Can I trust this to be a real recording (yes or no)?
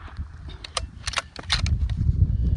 yes